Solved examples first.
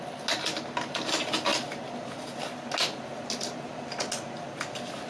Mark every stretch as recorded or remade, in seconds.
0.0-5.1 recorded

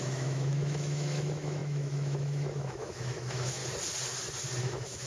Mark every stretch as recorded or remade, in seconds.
0.0-3.6 remade; 3.6-4.6 recorded; 4.6-5.1 remade